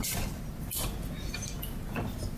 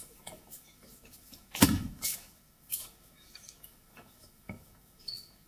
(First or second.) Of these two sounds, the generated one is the second